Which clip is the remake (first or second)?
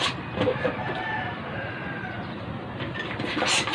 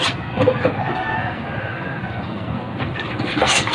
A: second